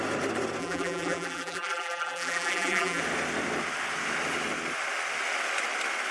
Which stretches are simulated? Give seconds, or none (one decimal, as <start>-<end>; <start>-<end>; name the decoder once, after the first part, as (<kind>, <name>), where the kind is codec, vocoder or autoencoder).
0.6-3.0 (vocoder, BigVGAN v2)